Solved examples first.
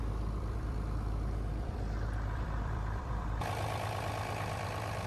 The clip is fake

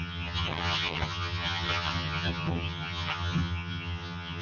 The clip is fake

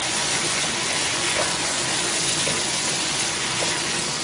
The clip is fake